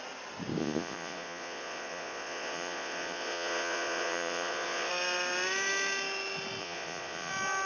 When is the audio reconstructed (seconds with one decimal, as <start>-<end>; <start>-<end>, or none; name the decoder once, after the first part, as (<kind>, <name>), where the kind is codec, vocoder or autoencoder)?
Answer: 0.6-4.9 (vocoder, Vocos); 6.6-7.3